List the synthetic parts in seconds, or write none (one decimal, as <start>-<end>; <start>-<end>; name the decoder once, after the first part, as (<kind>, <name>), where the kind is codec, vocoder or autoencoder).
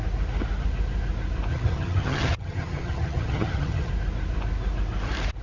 1.5-3.9 (vocoder, HiFi-GAN)